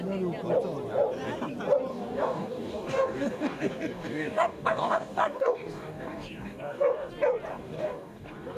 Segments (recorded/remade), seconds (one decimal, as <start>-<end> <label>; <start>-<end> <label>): 0.0-1.9 recorded; 1.9-7.1 remade; 7.1-7.5 recorded; 7.5-8.6 remade